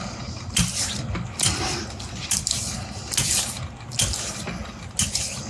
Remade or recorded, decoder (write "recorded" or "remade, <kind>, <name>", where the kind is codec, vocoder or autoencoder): recorded